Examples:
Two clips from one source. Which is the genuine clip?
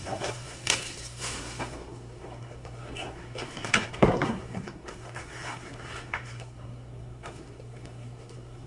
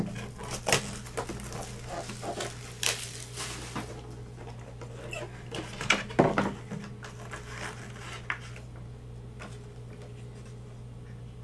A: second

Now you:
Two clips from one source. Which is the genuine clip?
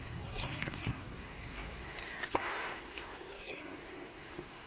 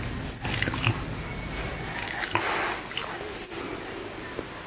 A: second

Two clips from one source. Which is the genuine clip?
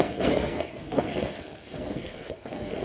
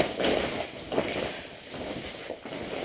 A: second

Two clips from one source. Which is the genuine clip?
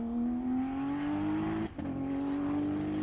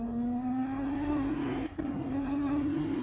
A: first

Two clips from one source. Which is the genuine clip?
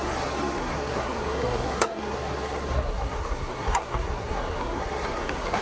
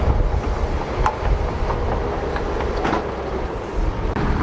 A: second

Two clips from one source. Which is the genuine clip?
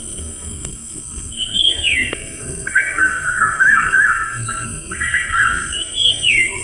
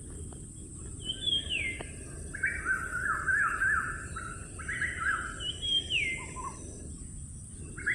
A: second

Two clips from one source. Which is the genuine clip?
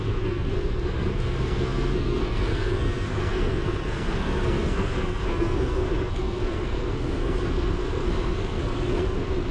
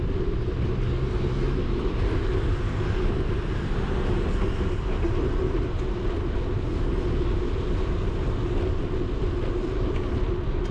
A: second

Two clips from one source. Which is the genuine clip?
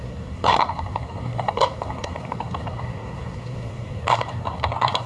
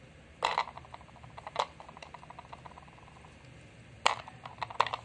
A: second